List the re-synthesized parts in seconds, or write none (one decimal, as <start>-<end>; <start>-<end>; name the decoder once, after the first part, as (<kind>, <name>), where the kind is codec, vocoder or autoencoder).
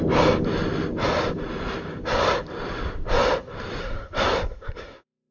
3.8-5.3 (codec, SNAC)